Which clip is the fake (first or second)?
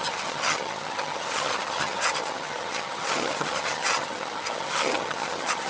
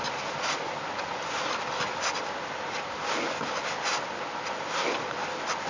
first